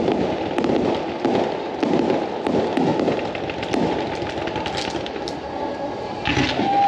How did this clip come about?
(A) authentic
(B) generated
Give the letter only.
A